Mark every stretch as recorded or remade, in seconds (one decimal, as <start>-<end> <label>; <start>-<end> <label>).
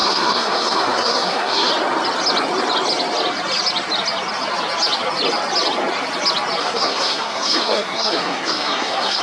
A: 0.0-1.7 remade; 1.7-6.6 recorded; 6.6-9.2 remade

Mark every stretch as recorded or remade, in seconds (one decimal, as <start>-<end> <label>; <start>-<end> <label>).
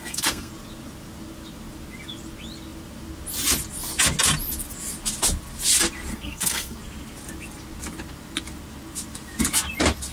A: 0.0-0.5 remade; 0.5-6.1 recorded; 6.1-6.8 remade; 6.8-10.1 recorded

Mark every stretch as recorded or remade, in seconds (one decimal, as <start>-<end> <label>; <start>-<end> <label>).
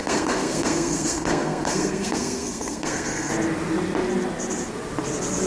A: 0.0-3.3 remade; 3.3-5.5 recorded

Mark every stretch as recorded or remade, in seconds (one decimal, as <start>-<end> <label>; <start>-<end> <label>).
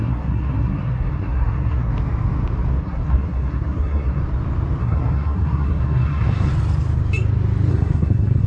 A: 0.0-1.9 remade; 1.9-2.8 recorded; 2.8-4.2 remade; 4.2-4.8 recorded; 4.8-6.5 remade; 6.5-7.7 recorded; 7.7-8.5 remade